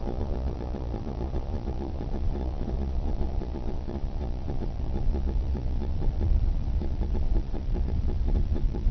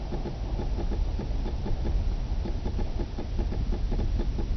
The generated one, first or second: first